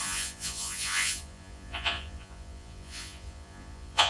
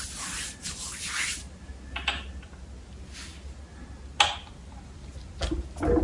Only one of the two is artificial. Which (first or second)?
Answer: first